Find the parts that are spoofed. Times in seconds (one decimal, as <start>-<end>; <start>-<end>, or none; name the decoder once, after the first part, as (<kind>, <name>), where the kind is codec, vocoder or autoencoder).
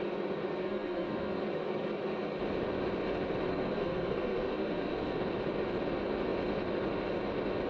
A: 0.6-1.4 (codec, SNAC); 3.5-5.2